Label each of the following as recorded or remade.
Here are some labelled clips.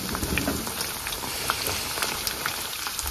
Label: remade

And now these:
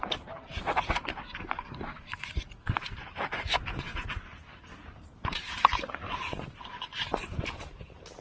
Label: remade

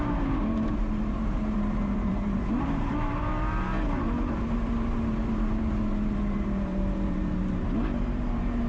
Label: remade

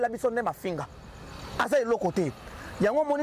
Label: recorded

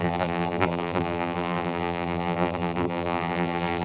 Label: remade